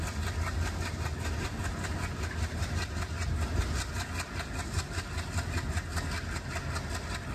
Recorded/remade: recorded